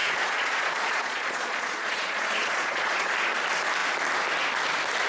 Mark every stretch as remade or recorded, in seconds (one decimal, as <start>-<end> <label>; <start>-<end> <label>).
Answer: 0.0-3.1 remade; 3.1-5.1 recorded